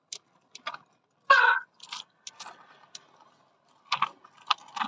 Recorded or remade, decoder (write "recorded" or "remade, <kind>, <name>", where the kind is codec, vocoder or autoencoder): recorded